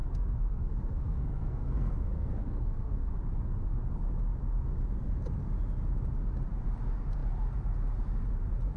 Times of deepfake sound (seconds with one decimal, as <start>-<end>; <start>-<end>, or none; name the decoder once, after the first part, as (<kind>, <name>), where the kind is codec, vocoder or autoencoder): 0.0-3.1 (codec, SNAC)